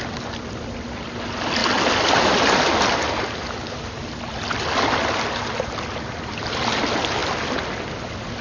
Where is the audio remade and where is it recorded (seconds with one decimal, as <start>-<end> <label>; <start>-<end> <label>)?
0.0-8.4 recorded

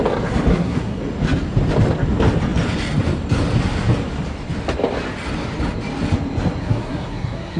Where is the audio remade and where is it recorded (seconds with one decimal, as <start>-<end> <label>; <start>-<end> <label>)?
0.0-0.5 recorded; 0.5-1.0 remade; 1.0-6.6 recorded; 6.6-7.6 remade

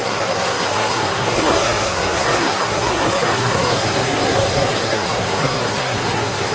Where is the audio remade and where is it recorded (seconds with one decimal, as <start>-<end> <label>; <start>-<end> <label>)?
0.0-6.5 remade

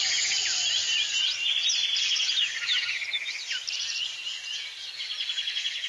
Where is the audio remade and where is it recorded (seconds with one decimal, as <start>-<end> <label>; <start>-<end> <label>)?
0.0-5.9 recorded

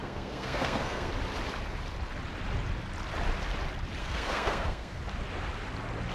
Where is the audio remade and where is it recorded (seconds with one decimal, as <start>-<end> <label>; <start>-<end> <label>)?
0.0-1.1 remade; 1.1-4.0 recorded; 4.0-5.0 remade; 5.0-6.1 recorded

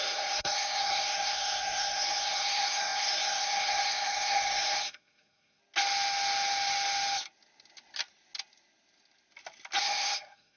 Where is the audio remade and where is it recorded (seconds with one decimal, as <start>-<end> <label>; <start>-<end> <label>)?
0.0-5.6 remade; 5.6-9.8 recorded; 9.8-10.6 remade

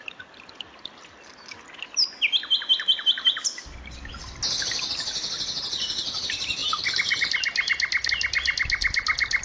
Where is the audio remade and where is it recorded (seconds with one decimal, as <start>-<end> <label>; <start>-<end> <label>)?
0.0-9.4 recorded